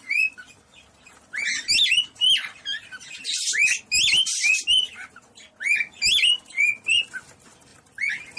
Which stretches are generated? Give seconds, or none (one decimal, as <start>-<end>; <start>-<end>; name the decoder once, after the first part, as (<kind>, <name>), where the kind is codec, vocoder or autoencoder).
none